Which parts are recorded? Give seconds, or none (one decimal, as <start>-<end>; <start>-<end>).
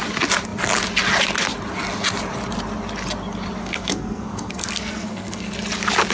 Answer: 0.0-3.6; 5.5-6.1